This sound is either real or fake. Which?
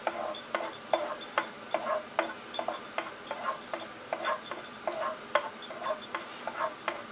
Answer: real